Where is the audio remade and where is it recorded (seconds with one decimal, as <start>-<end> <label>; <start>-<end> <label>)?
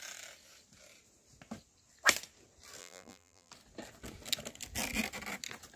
0.0-2.8 recorded; 2.8-3.5 remade; 3.5-5.8 recorded